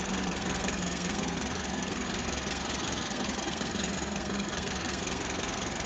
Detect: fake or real fake